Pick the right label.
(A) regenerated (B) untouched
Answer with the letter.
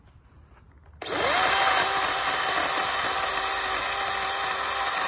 B